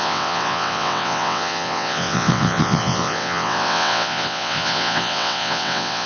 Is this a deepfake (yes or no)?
yes